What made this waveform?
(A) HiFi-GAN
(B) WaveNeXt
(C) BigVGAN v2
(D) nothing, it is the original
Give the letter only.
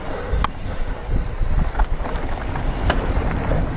D